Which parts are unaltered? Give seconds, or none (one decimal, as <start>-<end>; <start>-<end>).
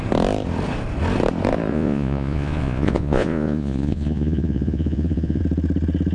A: 0.0-1.7; 5.4-6.1